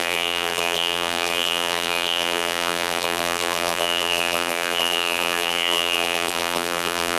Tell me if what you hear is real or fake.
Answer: fake